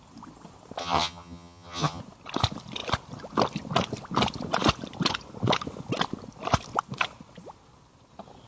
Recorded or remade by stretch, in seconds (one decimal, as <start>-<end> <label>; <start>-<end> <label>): 0.0-0.8 recorded; 0.8-2.0 remade; 2.0-8.5 recorded